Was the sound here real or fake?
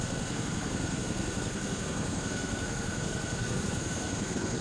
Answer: fake